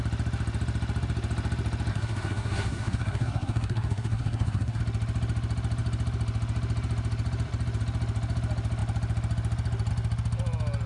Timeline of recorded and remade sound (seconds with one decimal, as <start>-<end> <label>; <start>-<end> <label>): 0.0-1.9 recorded; 1.9-4.8 remade; 4.8-10.9 recorded